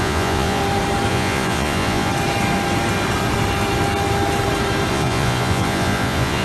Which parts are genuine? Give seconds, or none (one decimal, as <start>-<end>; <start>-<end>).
0.6-1.1; 2.1-4.9